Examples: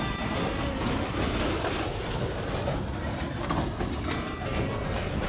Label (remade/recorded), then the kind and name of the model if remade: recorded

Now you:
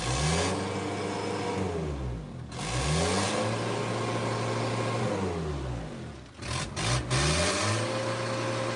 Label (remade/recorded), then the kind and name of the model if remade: recorded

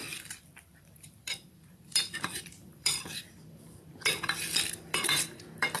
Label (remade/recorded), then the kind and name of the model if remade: remade, vocoder, BigVGAN v2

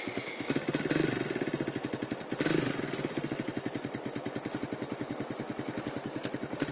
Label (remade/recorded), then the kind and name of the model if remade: recorded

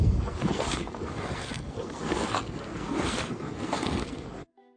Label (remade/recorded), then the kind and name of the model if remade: remade, codec, SNAC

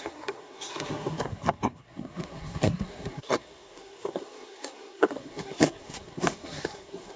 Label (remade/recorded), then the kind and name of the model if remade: remade, codec, SNAC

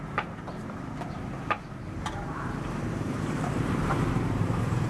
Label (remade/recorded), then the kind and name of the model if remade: remade, vocoder, BigVGAN v2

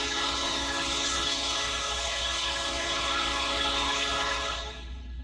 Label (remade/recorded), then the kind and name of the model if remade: remade, codec, HILCodec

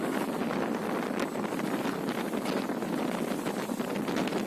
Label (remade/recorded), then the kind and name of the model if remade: recorded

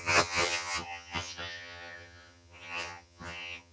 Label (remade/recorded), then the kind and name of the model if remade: remade, vocoder, HiFi-GAN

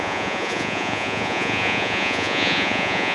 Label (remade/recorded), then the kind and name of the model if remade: remade, vocoder, Vocos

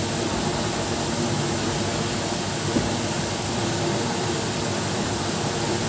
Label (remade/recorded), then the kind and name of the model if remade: recorded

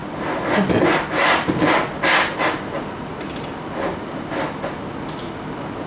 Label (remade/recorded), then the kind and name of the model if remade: recorded